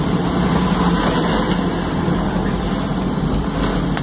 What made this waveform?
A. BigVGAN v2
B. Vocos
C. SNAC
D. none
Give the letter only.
D